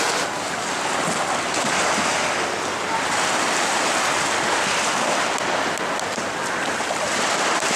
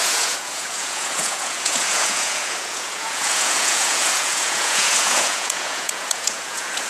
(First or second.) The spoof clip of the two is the second